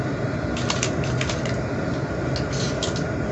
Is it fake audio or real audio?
real